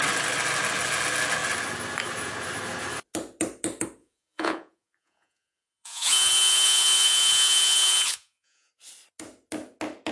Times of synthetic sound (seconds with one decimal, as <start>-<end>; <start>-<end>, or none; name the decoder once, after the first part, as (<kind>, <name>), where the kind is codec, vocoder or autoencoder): 4.0-8.7 (vocoder, Vocos)